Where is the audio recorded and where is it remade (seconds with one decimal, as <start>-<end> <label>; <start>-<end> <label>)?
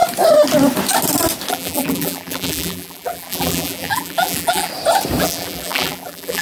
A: 0.0-1.5 recorded; 1.5-4.7 remade; 4.7-5.2 recorded; 5.2-6.4 remade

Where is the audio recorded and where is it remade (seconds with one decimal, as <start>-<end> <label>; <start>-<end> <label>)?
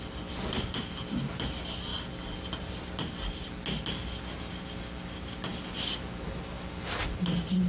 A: 0.0-7.7 recorded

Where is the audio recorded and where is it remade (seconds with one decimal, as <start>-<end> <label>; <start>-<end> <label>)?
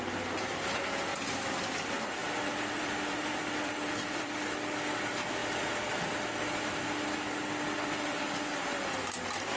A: 0.0-2.2 recorded; 2.2-4.4 remade; 4.4-9.6 recorded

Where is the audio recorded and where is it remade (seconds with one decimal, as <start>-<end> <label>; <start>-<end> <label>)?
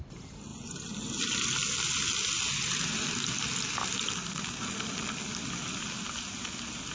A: 0.0-6.9 recorded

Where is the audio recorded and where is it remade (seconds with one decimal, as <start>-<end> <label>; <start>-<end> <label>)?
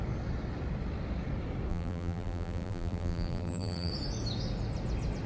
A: 0.0-1.7 recorded; 1.7-3.9 remade; 3.9-5.3 recorded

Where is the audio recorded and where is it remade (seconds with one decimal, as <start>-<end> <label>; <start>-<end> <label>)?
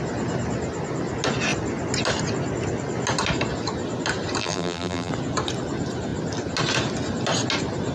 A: 0.0-4.4 recorded; 4.4-5.1 remade; 5.1-7.9 recorded